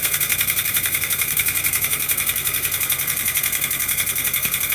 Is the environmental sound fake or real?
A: fake